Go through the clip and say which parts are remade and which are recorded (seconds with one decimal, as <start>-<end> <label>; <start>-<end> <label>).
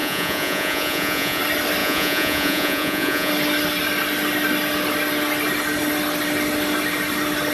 0.0-1.4 remade; 1.4-1.8 recorded; 1.8-3.3 remade; 3.3-7.5 recorded